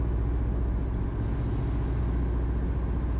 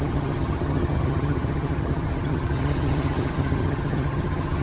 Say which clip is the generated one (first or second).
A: second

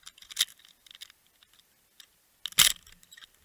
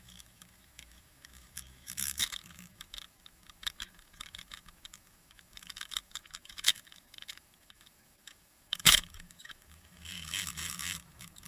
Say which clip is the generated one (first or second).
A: second